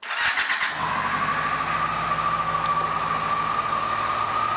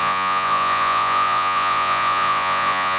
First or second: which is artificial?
second